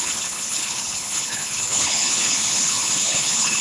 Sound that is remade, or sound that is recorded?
remade